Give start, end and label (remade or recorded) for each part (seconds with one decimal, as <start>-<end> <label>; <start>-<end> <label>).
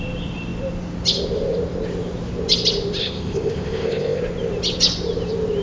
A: 0.0-3.0 recorded; 3.0-4.2 remade; 4.2-5.6 recorded